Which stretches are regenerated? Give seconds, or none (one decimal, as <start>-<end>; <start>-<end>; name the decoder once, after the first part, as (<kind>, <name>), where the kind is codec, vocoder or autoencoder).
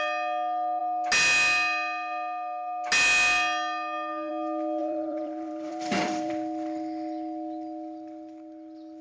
4.8-6.3 (vocoder, BigVGAN v2)